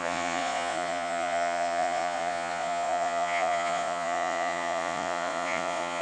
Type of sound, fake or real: fake